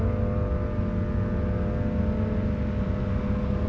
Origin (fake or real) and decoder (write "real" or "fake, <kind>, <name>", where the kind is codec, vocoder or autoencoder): real